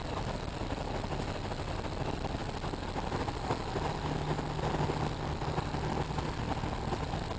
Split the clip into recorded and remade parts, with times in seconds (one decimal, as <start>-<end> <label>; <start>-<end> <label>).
0.0-7.4 recorded